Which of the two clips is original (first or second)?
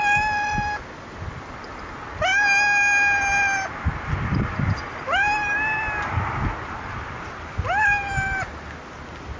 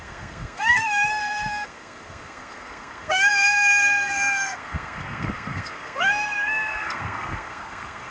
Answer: first